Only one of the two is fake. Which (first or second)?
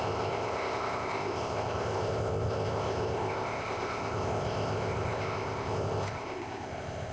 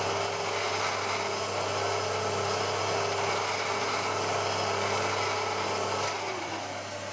first